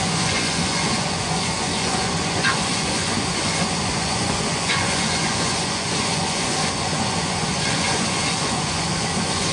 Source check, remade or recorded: remade